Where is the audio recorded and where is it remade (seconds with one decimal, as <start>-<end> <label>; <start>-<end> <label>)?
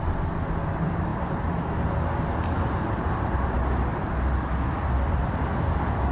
0.0-3.9 remade; 3.9-4.7 recorded; 4.7-6.1 remade